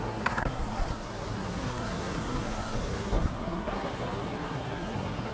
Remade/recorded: remade